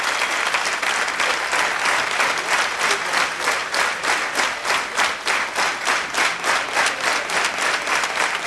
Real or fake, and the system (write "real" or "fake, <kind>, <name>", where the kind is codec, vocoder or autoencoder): real